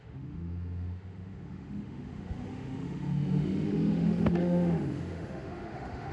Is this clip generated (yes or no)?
yes